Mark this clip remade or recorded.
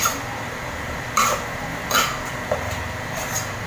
remade